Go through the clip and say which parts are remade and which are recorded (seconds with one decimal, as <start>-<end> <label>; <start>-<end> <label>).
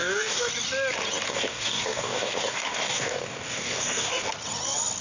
0.0-0.5 remade; 0.5-1.3 recorded; 1.3-4.3 remade; 4.3-5.0 recorded